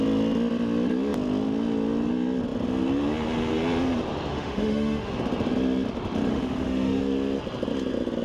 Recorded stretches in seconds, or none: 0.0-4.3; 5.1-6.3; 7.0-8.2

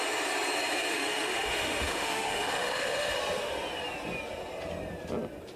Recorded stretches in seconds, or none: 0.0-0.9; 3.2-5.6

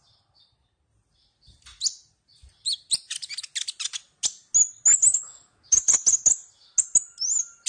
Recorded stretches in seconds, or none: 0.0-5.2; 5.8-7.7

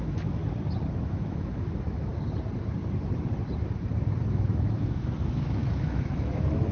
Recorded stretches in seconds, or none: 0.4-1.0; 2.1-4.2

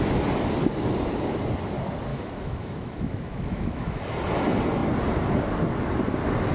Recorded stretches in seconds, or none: 0.0-2.1; 4.0-6.5